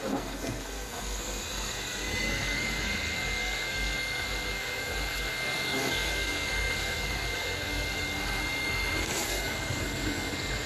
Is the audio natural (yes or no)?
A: no